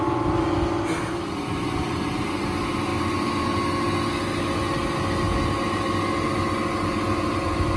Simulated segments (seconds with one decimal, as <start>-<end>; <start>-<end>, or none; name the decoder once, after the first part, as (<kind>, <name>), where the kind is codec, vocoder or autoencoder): none